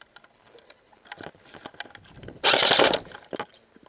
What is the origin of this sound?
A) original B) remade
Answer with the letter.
A